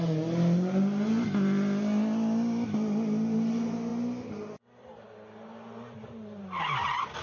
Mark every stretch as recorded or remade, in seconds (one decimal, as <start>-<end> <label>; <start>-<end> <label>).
0.0-7.2 recorded